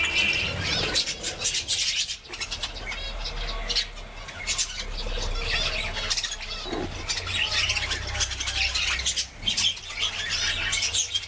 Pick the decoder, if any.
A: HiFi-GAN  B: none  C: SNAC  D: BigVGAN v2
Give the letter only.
B